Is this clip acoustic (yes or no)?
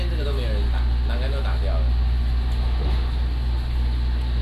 yes